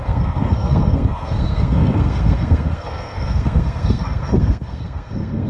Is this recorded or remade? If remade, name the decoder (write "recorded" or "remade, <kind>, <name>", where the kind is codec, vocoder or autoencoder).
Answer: remade, codec, SNAC